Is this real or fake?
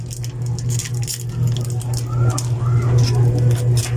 real